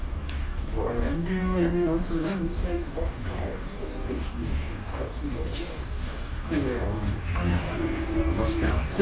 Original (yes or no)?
no